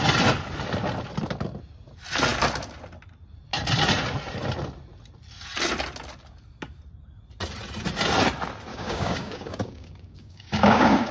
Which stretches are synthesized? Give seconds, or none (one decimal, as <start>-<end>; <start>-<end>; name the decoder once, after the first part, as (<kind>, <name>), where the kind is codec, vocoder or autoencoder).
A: 8.7-11.1 (codec, DAC)